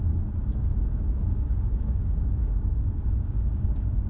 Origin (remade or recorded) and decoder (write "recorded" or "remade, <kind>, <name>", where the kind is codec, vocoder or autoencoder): remade, codec, DAC